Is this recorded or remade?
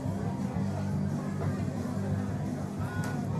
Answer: recorded